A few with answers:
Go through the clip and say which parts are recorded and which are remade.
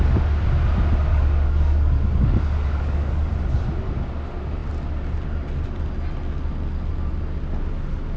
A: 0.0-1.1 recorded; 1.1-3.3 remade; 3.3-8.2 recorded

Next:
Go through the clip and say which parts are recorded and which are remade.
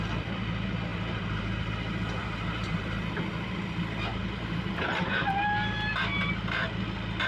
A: 0.0-0.9 recorded; 0.9-1.7 remade; 1.7-2.2 recorded; 2.2-3.1 remade; 3.1-4.1 recorded; 4.1-4.7 remade; 4.7-7.3 recorded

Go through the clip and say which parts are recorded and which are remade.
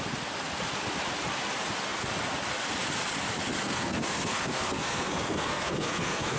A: 0.0-3.6 recorded; 3.6-6.4 remade